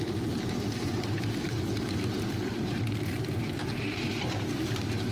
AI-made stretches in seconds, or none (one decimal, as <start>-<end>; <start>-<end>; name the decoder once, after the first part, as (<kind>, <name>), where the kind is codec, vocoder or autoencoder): 0.0-5.1 (vocoder, BigVGAN v2)